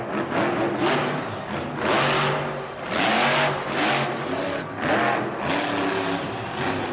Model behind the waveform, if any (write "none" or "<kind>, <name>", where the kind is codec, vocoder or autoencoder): none